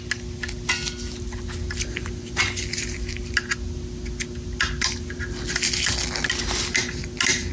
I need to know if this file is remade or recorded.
recorded